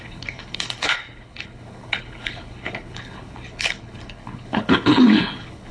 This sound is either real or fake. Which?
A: fake